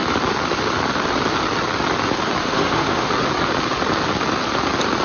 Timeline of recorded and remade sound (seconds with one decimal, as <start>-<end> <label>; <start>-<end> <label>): 0.0-2.4 recorded; 2.4-3.1 remade; 3.1-5.0 recorded